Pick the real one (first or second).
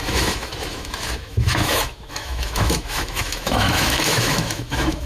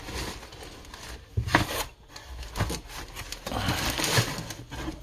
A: second